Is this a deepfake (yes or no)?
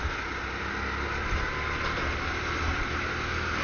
no